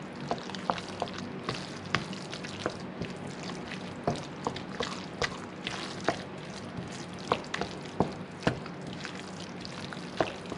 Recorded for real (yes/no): yes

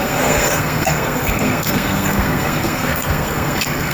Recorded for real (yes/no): no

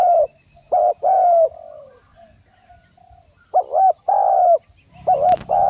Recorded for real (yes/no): yes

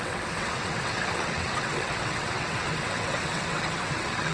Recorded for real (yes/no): no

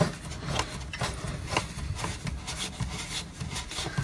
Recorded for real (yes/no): yes